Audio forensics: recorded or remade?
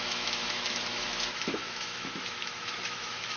remade